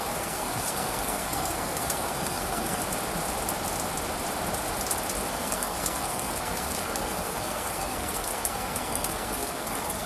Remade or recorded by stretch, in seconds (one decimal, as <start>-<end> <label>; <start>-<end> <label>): 0.0-2.8 remade; 2.8-5.3 recorded; 5.3-10.1 remade